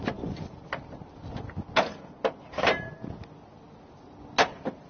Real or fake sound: real